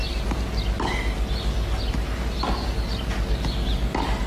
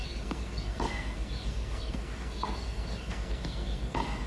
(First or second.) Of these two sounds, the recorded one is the first